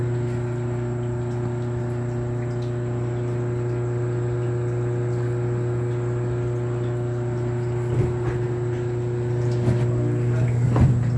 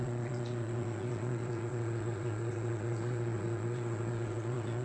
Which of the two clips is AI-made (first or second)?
second